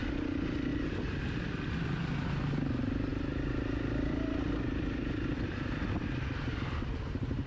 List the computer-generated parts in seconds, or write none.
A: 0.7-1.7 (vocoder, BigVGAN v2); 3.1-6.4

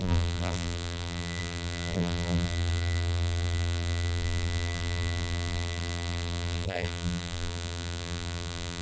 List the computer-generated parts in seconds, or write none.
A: 0.0-8.8 (vocoder, BigVGAN v2)